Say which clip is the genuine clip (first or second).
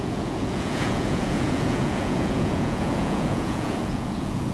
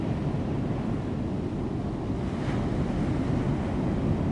second